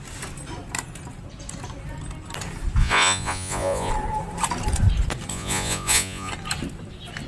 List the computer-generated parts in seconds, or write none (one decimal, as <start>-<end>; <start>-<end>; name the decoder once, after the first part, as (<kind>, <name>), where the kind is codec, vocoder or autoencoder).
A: 2.8-3.9 (vocoder, Vocos); 5.3-6.3